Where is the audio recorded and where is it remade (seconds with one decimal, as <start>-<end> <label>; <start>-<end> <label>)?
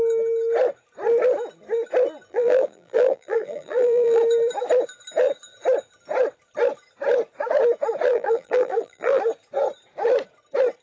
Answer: 0.0-2.3 recorded; 2.3-4.2 remade; 4.2-8.1 recorded; 8.1-9.2 remade; 9.2-10.8 recorded